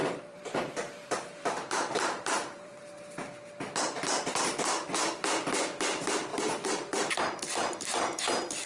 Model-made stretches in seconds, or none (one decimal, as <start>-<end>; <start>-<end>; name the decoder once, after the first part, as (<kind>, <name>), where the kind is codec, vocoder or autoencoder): 0.0-2.8 (vocoder, BigVGAN v2); 6.3-8.2